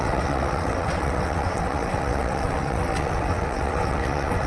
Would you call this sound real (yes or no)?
no